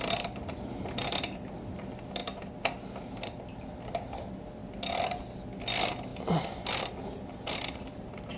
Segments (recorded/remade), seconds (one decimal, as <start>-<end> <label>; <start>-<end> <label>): 0.0-8.4 recorded